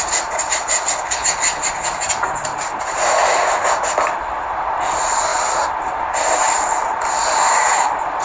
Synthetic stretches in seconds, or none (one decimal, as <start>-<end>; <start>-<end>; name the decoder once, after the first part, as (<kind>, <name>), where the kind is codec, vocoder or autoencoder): none